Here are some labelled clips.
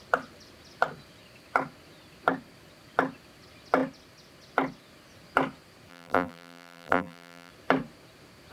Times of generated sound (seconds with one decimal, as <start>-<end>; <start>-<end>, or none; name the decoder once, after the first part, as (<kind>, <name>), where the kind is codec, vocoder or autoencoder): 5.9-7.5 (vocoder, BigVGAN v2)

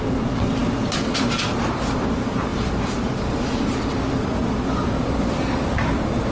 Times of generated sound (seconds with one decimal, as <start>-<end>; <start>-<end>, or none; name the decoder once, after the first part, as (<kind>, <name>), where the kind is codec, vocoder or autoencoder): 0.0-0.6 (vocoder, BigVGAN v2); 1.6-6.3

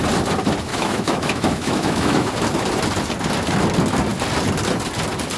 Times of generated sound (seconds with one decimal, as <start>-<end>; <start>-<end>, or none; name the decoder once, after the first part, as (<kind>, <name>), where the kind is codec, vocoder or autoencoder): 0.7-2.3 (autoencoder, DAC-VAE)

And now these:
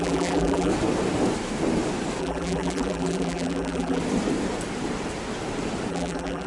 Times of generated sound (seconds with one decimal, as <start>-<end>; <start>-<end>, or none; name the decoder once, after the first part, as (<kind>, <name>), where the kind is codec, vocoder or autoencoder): 0.0-0.7 (vocoder, BigVGAN v2); 2.2-4.0; 5.9-6.5

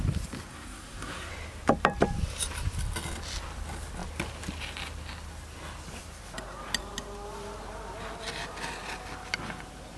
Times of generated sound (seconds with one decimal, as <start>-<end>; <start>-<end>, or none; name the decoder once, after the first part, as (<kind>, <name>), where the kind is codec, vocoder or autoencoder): 0.5-1.3 (codec, SNAC)

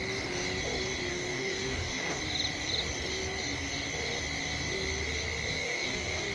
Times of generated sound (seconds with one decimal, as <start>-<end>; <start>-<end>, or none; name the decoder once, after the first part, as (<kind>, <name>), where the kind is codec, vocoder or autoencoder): 1.1-2.2 (codec, DAC); 5.5-6.3

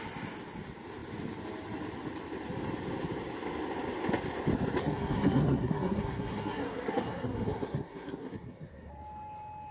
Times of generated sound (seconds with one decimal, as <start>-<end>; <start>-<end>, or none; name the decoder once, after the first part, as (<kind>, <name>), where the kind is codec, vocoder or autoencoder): 4.8-8.9 (codec, SNAC)